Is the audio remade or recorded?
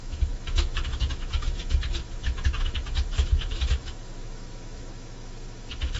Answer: remade